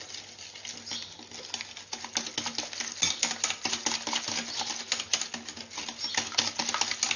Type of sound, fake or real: real